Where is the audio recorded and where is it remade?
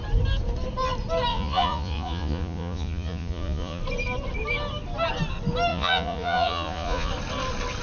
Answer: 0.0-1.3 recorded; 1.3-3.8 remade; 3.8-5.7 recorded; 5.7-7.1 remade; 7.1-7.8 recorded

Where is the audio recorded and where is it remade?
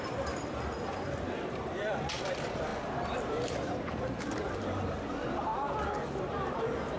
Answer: 0.0-5.5 remade; 5.5-6.3 recorded; 6.3-7.0 remade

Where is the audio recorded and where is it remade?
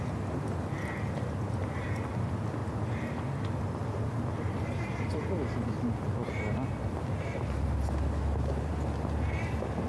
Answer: 0.0-1.6 recorded; 1.6-2.2 remade; 2.2-9.9 recorded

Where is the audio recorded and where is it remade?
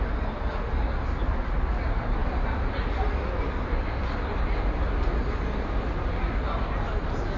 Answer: 0.0-7.4 recorded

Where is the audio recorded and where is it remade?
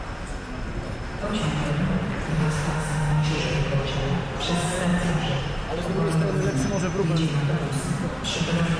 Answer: 0.0-2.3 recorded; 2.3-3.4 remade; 3.4-8.8 recorded